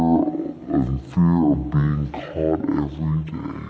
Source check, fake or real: real